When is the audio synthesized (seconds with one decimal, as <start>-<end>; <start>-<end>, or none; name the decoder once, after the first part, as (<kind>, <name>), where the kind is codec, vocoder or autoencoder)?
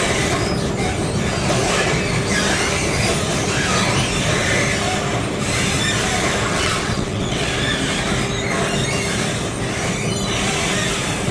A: 6.5-7.5 (vocoder, WaveNeXt)